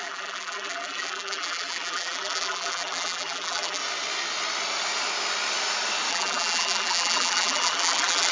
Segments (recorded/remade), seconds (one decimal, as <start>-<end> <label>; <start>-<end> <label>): 0.0-3.8 remade; 3.8-6.1 recorded; 6.1-8.3 remade